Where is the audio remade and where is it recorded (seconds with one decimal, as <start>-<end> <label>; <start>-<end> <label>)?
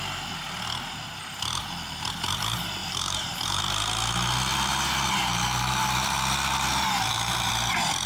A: 0.0-2.8 recorded; 2.8-3.6 remade; 3.6-4.5 recorded; 4.5-6.2 remade; 6.2-6.7 recorded; 6.7-7.5 remade; 7.5-8.1 recorded